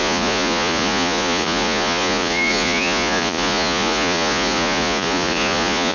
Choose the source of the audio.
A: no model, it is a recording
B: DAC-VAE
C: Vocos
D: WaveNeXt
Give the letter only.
C